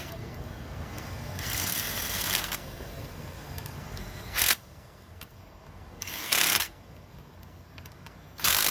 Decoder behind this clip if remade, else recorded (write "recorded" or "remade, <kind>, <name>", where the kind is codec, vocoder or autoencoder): remade, codec, SNAC